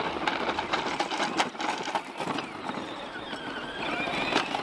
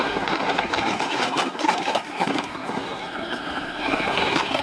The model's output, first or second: second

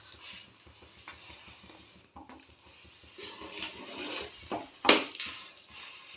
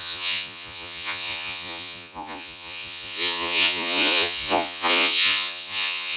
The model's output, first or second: second